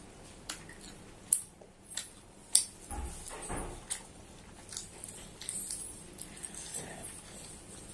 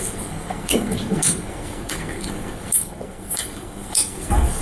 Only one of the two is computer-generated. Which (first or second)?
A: second